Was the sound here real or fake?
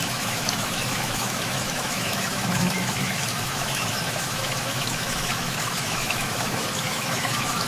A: fake